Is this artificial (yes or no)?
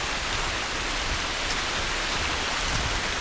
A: no